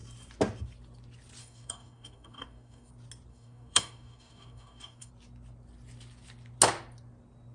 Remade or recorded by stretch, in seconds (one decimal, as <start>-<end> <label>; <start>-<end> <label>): 0.0-1.4 recorded; 1.4-2.9 remade; 2.9-3.3 recorded; 3.3-5.1 remade; 5.1-7.5 recorded